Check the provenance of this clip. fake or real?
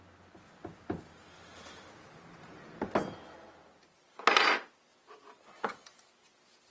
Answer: real